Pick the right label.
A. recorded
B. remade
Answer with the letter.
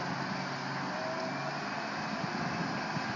A